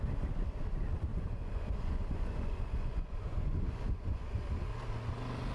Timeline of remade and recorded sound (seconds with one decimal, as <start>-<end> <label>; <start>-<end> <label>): 0.0-1.1 recorded; 1.1-4.4 remade; 4.4-5.5 recorded